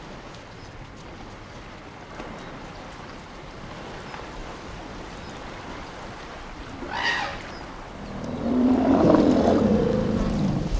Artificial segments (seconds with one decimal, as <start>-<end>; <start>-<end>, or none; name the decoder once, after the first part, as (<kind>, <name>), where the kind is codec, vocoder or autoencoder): 4.4-5.3 (vocoder, BigVGAN v2); 7.3-10.8